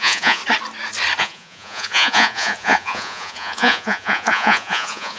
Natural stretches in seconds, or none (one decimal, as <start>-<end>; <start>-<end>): 0.4-1.2